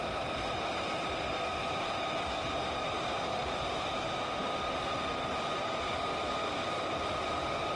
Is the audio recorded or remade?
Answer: recorded